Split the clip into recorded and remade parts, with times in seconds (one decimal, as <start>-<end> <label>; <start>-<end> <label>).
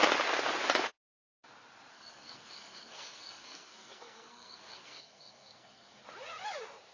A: 0.0-1.9 recorded; 1.9-6.0 remade; 6.0-6.9 recorded